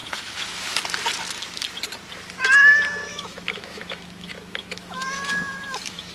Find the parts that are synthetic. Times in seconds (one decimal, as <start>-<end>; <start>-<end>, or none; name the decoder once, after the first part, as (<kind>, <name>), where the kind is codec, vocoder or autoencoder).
0.0-0.8 (autoencoder, DAC-VAE); 3.1-6.1